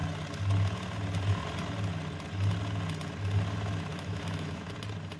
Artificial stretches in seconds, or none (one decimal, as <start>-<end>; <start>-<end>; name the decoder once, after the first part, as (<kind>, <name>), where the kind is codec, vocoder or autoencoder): 3.9-4.7 (autoencoder, DAC-VAE)